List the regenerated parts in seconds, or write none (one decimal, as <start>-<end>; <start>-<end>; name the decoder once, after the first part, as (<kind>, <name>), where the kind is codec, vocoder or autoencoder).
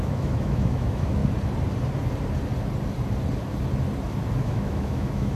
0.0-1.2 (autoencoder, DAC-VAE); 4.4-5.4